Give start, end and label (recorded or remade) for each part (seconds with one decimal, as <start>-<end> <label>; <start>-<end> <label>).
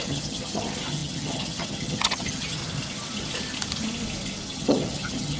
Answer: 0.0-2.6 remade; 2.6-4.5 recorded; 4.5-5.4 remade